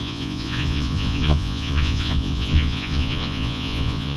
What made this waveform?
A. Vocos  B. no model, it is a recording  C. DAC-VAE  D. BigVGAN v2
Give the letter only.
A